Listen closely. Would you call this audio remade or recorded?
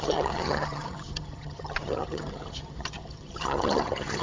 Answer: remade